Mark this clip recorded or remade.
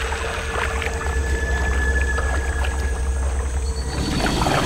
recorded